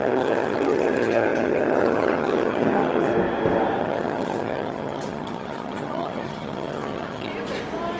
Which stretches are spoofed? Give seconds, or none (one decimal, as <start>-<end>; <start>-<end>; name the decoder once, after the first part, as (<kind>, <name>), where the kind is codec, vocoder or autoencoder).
0.0-3.1 (vocoder, HiFi-GAN); 3.8-7.3